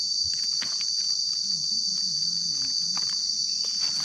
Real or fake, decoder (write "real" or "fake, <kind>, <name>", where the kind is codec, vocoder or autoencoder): real